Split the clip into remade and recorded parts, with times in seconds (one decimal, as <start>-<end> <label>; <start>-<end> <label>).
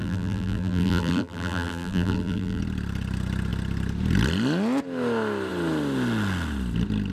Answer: 0.0-2.6 remade; 2.6-7.1 recorded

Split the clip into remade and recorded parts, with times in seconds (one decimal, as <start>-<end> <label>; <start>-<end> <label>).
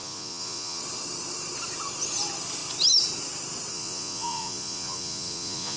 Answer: 0.0-0.8 remade; 0.8-3.7 recorded; 3.7-5.8 remade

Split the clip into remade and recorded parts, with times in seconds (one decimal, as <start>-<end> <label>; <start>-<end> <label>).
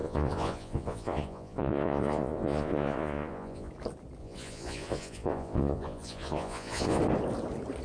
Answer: 0.0-3.7 remade; 3.7-4.2 recorded; 4.2-7.0 remade; 7.0-7.8 recorded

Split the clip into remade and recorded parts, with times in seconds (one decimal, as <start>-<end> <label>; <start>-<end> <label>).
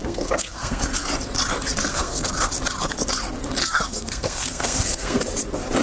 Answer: 0.0-0.8 remade; 0.8-1.9 recorded; 1.9-2.5 remade; 2.5-3.6 recorded; 3.6-5.2 remade; 5.2-5.8 recorded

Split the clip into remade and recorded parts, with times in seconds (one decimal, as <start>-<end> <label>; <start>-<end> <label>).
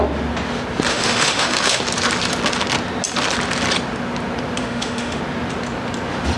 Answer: 0.0-0.9 recorded; 0.9-1.8 remade; 1.8-4.6 recorded; 4.6-5.2 remade; 5.2-6.4 recorded